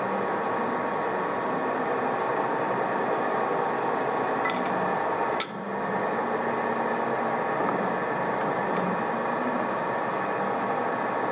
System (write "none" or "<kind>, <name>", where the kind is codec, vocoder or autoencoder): none